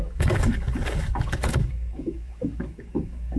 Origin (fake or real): fake